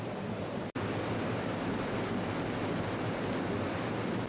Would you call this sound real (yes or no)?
yes